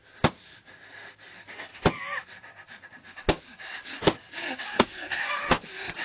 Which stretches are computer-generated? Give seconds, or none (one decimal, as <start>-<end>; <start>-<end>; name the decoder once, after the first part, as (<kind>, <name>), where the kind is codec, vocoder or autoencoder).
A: 4.7-5.3 (codec, SNAC)